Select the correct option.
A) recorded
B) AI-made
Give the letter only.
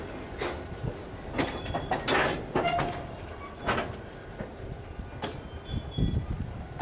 A